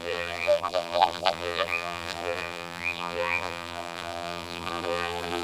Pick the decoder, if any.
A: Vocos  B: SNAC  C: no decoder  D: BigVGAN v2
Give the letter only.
D